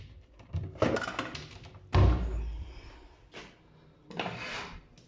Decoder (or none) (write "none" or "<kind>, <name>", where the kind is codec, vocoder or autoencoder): none